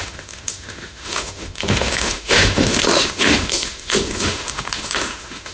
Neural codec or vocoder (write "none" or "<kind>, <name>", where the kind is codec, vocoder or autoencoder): autoencoder, DAC-VAE